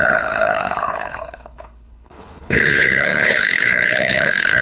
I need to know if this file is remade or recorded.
remade